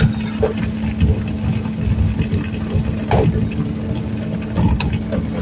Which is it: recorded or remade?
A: recorded